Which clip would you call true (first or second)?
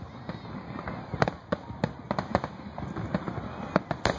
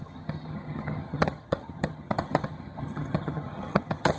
first